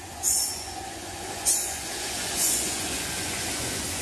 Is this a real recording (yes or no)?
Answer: no